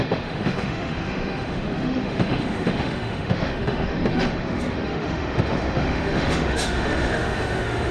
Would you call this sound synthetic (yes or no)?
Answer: yes